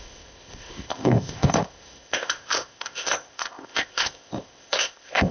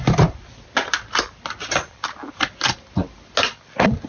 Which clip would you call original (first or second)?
second